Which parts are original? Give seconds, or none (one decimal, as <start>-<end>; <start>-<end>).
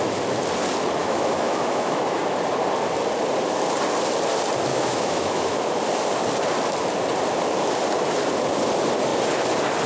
0.0-1.0; 2.2-4.7; 5.6-9.9